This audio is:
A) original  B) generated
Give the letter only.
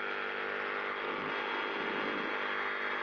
A